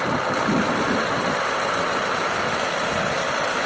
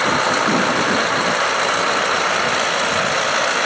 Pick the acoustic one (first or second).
second